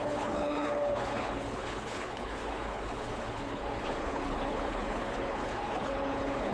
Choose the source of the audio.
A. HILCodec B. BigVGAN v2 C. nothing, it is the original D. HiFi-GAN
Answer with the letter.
A